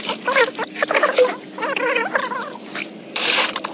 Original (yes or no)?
yes